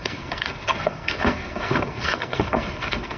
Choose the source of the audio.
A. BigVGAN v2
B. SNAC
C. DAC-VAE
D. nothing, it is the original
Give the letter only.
B